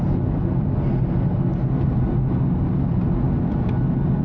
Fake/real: real